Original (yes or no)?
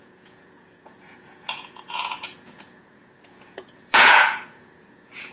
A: no